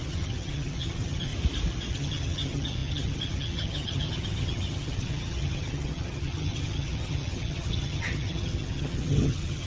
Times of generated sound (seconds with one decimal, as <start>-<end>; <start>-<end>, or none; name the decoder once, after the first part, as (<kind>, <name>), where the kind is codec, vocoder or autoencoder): 0.0-1.3 (vocoder, HiFi-GAN); 1.9-9.7